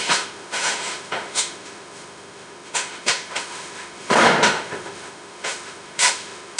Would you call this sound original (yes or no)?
no